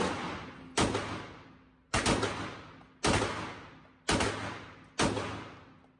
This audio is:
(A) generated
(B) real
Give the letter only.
B